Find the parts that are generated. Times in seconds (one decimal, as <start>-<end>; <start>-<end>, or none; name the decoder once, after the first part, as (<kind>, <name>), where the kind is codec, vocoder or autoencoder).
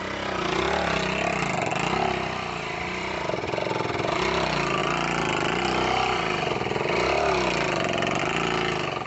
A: 1.7-4.2 (vocoder, BigVGAN v2)